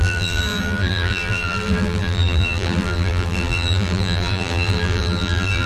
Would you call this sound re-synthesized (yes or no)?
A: yes